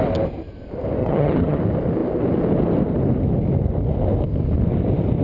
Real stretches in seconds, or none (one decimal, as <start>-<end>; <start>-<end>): 0.0-1.0; 1.6-5.2

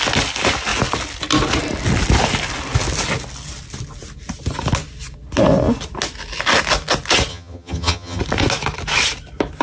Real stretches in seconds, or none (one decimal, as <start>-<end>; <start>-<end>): 0.0-7.3; 8.2-9.6

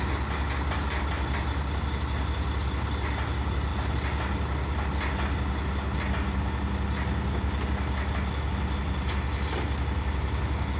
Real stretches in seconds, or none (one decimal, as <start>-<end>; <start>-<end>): 0.0-10.8

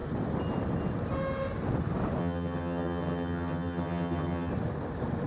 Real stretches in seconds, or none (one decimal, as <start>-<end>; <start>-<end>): 0.0-2.2; 4.5-5.3